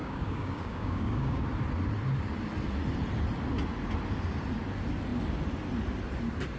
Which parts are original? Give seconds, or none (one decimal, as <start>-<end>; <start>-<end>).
1.4-6.6